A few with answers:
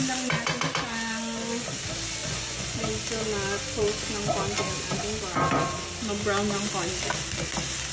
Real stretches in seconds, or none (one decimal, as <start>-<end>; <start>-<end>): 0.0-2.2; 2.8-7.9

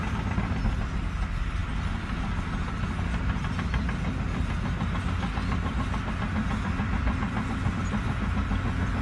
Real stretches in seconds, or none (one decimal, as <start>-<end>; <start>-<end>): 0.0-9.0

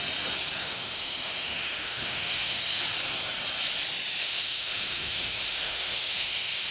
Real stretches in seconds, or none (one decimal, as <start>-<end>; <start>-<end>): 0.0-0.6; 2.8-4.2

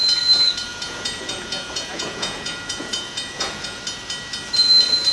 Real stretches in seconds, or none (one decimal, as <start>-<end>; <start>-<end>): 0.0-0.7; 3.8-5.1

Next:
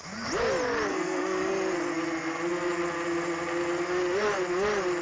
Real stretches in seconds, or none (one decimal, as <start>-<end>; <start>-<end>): 0.0-0.9; 1.5-5.0